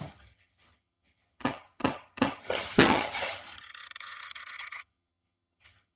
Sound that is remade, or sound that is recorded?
remade